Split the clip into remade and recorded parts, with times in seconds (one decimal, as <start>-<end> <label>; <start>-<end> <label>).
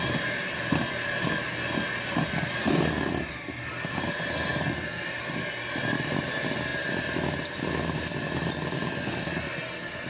0.0-10.1 recorded